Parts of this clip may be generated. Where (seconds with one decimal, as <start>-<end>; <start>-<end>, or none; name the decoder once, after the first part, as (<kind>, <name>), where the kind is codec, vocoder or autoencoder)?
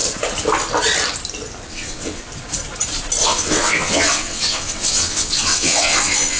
1.7-2.2 (vocoder, WaveNeXt); 3.2-6.4